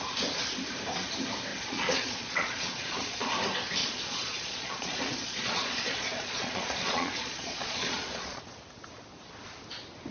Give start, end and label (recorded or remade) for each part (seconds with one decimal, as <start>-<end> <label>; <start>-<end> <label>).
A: 0.0-1.5 recorded; 1.5-3.3 remade; 3.3-3.8 recorded; 3.8-8.4 remade; 8.4-10.1 recorded